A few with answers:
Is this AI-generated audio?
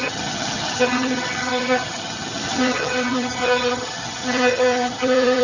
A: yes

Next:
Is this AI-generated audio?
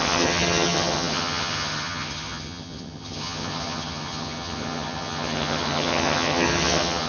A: yes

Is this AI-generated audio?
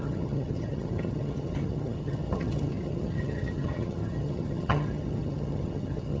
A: yes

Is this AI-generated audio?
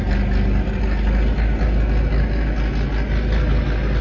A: no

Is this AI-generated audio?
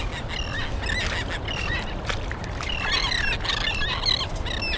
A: no